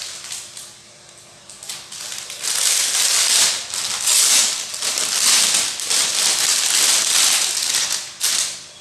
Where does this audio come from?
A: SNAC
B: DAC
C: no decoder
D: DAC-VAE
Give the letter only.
C